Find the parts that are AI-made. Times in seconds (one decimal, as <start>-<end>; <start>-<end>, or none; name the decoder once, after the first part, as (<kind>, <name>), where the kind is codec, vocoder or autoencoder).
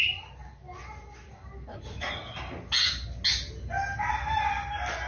1.7-2.2 (vocoder, Vocos)